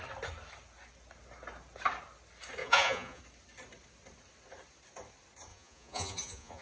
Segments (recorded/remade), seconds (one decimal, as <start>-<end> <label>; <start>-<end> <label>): 0.0-2.6 recorded; 2.6-3.2 remade; 3.2-5.5 recorded; 5.5-6.6 remade